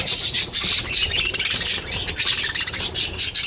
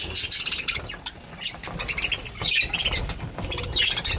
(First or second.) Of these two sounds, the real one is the second